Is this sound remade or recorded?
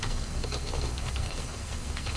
remade